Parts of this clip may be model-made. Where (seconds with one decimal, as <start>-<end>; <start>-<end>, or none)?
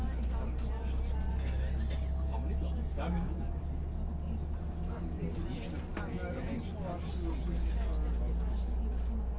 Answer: 2.9-3.6